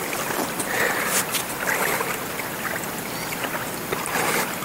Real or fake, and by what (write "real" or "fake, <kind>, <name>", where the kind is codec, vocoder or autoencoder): real